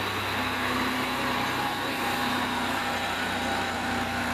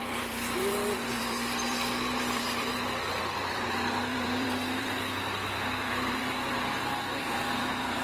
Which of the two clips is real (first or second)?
first